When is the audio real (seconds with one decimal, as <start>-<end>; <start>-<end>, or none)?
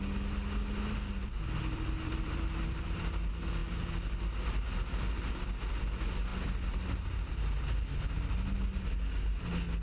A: 0.0-1.2; 2.8-9.8